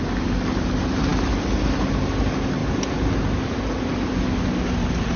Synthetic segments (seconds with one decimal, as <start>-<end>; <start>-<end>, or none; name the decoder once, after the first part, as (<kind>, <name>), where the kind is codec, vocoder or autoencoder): none

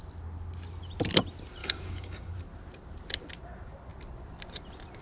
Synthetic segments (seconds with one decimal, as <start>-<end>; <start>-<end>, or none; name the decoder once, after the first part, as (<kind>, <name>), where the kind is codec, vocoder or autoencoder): 1.6-2.3 (codec, DAC)

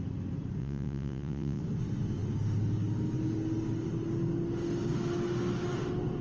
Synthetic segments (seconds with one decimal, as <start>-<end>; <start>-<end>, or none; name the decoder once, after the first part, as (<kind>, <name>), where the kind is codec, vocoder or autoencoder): 0.6-1.6 (vocoder, Vocos)